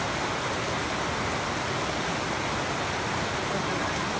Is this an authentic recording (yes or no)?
yes